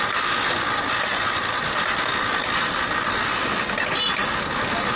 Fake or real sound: fake